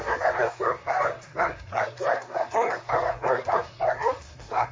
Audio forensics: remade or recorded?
remade